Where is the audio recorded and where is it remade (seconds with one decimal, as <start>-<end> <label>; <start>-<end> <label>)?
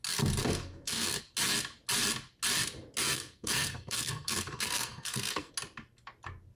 0.0-0.4 recorded; 0.4-1.2 remade; 1.2-3.0 recorded; 3.0-5.5 remade; 5.5-6.6 recorded